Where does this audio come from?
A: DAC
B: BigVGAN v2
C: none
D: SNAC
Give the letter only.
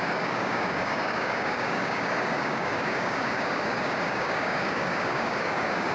A